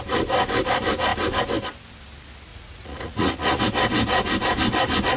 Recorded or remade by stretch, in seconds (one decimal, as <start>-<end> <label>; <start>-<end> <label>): 0.0-2.5 recorded; 2.5-3.6 remade; 3.6-5.2 recorded